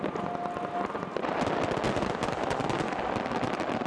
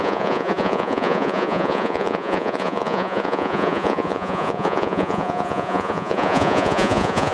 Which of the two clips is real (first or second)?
first